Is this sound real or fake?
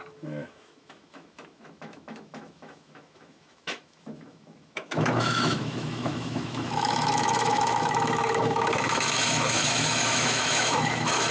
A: fake